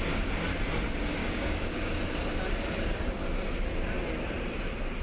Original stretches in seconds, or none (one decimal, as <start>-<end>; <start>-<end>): 0.0-1.2; 1.9-5.0